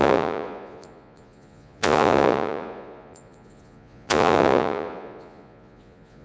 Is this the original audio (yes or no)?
no